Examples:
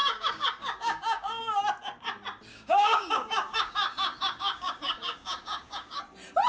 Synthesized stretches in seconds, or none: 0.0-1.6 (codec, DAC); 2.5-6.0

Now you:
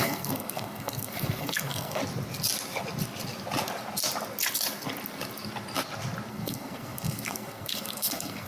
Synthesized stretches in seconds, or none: 0.0-2.0 (codec, SNAC); 6.3-8.5

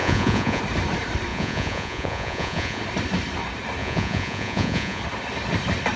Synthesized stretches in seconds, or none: 0.0-0.6 (vocoder, Vocos); 1.3-2.8; 3.8-5.0

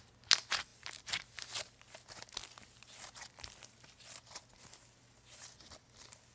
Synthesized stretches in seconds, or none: none

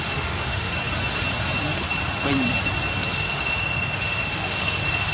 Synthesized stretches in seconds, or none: 0.0-0.7 (autoencoder, DAC-VAE); 3.1-5.1